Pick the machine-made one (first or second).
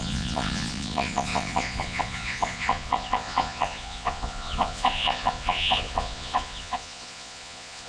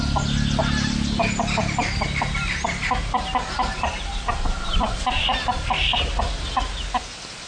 first